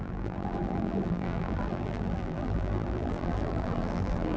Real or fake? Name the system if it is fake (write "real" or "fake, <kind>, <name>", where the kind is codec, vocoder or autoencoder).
fake, vocoder, BigVGAN v2